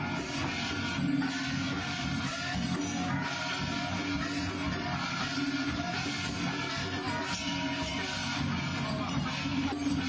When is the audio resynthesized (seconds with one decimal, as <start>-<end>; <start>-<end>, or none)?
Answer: none